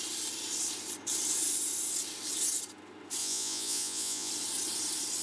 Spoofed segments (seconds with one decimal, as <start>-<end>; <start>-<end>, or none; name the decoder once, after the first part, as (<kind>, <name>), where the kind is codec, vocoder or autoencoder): 3.2-4.3 (vocoder, Vocos)